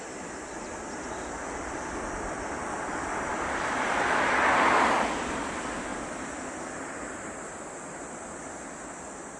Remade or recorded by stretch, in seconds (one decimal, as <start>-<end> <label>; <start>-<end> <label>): 0.0-9.4 recorded